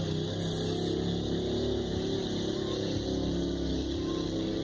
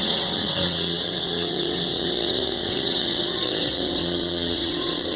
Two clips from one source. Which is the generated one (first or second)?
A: second